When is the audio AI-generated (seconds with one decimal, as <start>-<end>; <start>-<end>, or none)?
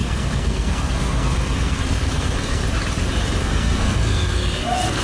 0.0-2.6; 3.4-5.0